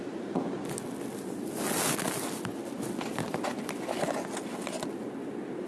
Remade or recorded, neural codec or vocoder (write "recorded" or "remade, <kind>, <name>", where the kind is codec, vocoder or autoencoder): recorded